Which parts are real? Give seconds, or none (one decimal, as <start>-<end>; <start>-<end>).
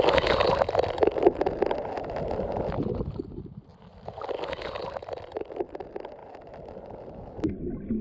0.0-8.0